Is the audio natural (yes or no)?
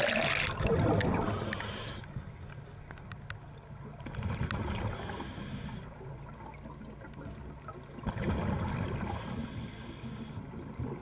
yes